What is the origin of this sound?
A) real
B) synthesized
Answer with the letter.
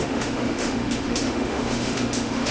B